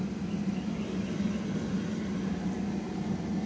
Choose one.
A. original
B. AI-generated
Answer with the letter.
A